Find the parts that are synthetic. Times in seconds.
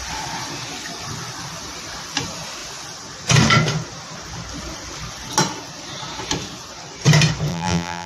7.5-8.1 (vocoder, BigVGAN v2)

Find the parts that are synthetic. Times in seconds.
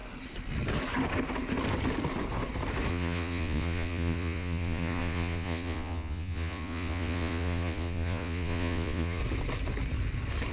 2.9-9.2 (vocoder, Vocos)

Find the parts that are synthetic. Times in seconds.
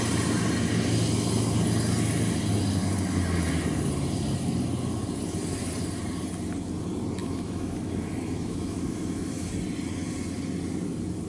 7.2-9.5 (autoencoder, DAC-VAE)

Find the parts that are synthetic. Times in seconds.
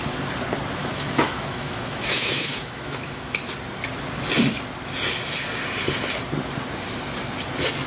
0.8-3.4 (autoencoder, DAC-VAE)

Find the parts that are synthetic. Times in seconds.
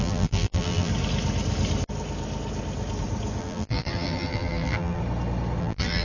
0.0-0.9 (vocoder, BigVGAN v2); 3.4-5.0; 5.6-6.0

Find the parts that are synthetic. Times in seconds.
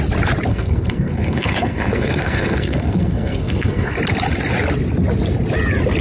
0.5-4.0 (codec, SNAC)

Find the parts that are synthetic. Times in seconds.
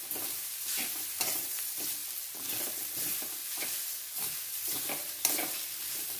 0.0-2.0 (vocoder, BigVGAN v2); 3.0-3.4; 4.5-6.2